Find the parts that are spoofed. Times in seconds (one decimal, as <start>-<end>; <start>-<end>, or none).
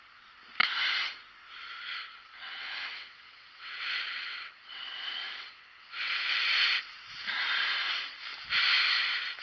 2.0-4.8; 5.2-6.4